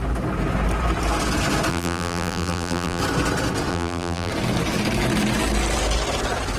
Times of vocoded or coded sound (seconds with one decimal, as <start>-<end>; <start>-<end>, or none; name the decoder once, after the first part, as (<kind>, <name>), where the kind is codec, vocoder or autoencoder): 1.7-3.0 (vocoder, BigVGAN v2); 3.7-4.3